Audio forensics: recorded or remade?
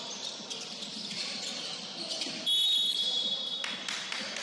recorded